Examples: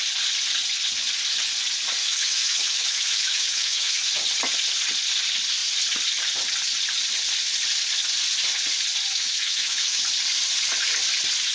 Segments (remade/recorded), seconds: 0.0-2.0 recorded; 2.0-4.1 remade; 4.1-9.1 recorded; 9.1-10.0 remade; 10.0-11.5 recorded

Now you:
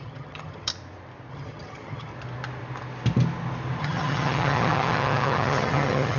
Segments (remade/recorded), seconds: 0.0-0.7 remade; 0.7-1.3 recorded; 1.3-2.1 remade; 2.1-3.8 recorded; 3.8-6.2 remade

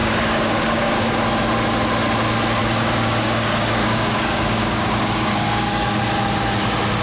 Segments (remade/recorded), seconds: 0.0-1.2 remade; 1.2-2.6 recorded; 2.6-6.0 remade; 6.0-7.0 recorded

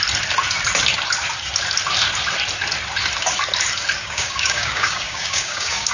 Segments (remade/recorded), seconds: 0.0-4.0 recorded; 4.0-5.9 remade

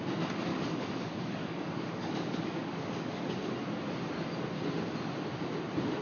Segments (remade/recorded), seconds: 0.0-0.5 recorded; 0.5-3.4 remade; 3.4-6.0 recorded

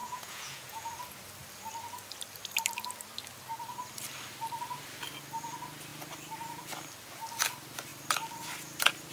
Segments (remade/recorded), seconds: 0.0-0.9 remade; 0.9-9.1 recorded